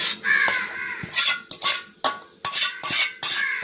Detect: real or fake real